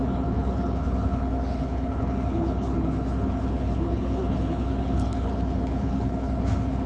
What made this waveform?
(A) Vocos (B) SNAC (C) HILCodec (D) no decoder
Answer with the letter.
C